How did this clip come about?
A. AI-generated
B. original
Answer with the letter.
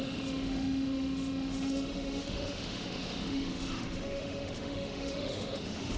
A